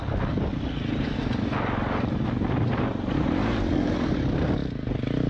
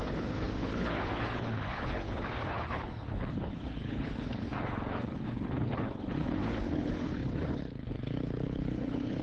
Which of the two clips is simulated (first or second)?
second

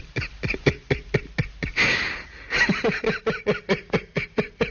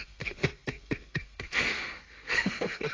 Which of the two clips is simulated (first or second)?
second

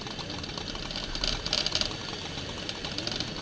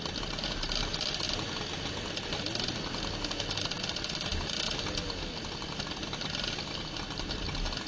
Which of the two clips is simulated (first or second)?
first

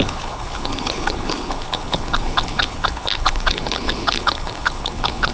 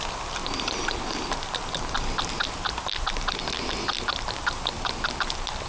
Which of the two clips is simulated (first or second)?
first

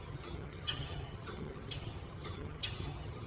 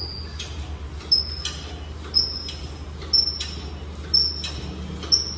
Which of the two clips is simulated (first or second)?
first